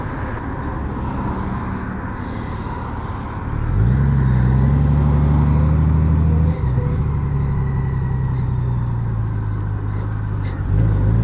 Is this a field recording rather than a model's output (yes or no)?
yes